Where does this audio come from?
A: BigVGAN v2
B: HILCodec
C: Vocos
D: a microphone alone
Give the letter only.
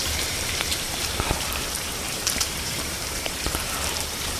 A